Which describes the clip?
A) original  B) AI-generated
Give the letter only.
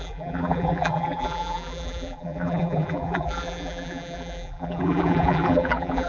B